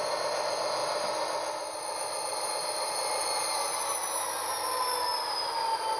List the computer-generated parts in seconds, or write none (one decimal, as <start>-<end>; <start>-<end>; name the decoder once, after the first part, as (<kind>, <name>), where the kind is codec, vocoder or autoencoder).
2.3-3.0 (vocoder, BigVGAN v2)